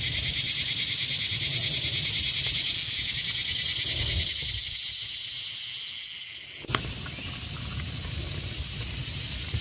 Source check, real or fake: real